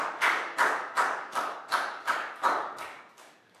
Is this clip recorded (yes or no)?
no